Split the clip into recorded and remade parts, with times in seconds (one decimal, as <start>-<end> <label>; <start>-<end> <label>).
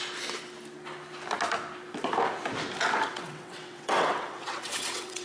0.0-3.1 recorded; 3.1-5.2 remade